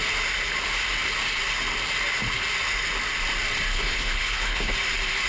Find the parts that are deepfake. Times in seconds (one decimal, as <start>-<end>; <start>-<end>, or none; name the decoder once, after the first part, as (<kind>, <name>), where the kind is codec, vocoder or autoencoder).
3.7-4.7 (codec, HILCodec)